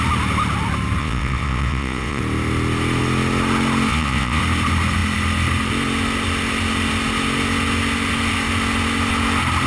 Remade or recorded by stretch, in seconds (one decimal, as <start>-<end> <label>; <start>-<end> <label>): 0.0-1.0 recorded; 1.0-2.2 remade; 2.2-3.9 recorded; 3.9-4.4 remade; 4.4-9.7 recorded